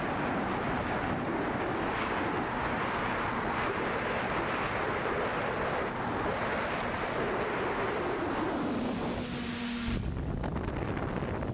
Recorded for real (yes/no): yes